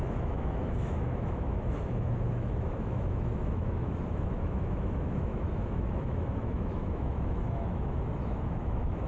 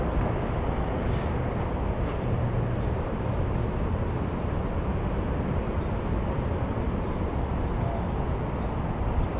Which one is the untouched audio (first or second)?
second